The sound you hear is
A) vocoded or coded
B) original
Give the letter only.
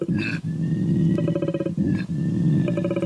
B